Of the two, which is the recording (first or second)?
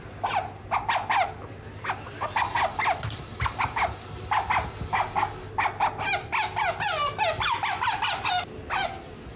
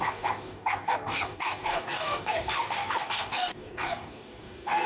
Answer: first